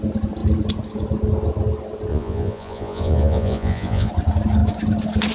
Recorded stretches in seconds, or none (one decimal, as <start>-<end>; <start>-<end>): 0.0-2.1; 4.1-5.3